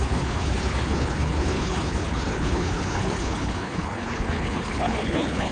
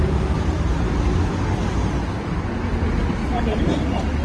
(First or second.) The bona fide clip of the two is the second